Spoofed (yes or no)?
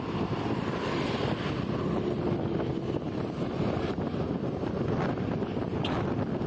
no